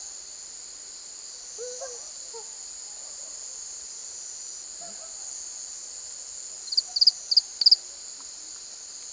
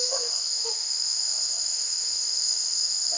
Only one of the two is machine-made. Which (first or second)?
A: second